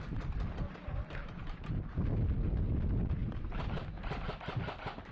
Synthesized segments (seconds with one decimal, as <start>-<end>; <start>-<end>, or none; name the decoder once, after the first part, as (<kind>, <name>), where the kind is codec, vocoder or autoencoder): 1.2-1.8 (vocoder, BigVGAN v2); 3.2-3.8